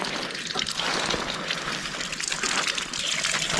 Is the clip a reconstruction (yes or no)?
no